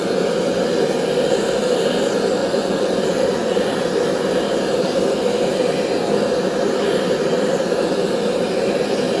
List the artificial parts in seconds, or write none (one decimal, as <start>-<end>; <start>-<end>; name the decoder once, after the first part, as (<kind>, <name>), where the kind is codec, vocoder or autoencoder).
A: 2.4-3.9 (vocoder, Vocos)